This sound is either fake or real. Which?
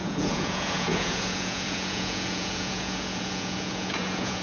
fake